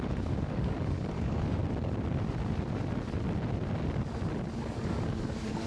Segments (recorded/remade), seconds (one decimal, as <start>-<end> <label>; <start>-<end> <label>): 0.0-1.6 remade; 1.6-4.6 recorded; 4.6-5.7 remade